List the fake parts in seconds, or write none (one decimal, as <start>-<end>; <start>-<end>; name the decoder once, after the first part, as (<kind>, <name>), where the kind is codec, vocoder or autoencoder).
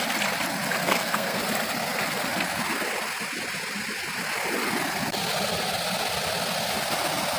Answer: 0.8-1.4 (codec, SNAC)